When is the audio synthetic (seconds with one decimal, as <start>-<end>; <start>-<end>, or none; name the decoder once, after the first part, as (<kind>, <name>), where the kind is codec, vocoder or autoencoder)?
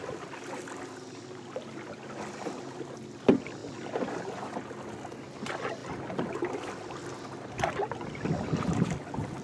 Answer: none